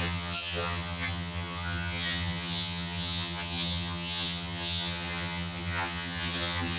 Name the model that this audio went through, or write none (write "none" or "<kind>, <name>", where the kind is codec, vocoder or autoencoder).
vocoder, HiFi-GAN